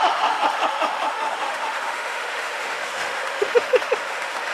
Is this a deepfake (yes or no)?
yes